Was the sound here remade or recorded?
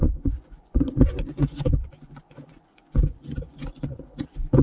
remade